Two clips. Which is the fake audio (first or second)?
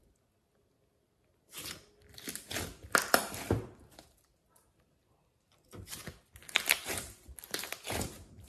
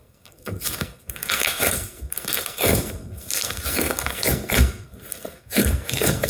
second